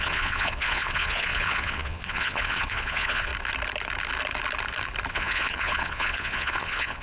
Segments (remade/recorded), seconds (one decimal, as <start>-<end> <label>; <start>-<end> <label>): 0.0-3.3 remade; 3.3-5.1 recorded; 5.1-7.0 remade